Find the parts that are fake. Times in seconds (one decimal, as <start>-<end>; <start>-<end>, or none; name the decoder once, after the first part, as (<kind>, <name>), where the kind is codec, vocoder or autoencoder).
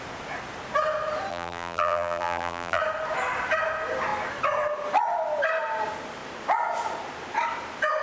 1.3-2.8 (vocoder, BigVGAN v2)